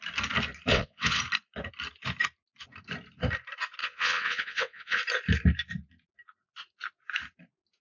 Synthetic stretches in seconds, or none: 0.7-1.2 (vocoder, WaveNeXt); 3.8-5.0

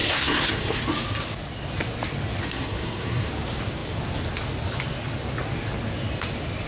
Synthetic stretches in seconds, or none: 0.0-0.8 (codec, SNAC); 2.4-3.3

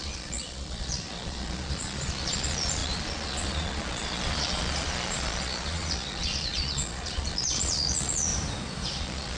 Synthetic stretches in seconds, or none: 0.0-8.3 (vocoder, Vocos); 9.0-9.4